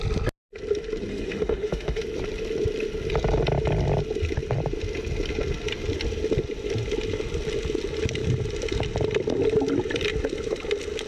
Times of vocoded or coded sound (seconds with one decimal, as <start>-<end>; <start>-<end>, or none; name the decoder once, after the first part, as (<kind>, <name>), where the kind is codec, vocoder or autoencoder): 1.1-2.0 (autoencoder, DAC-VAE)